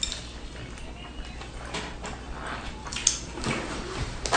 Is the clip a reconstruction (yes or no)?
no